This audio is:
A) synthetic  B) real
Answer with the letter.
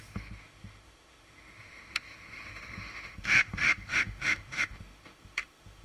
A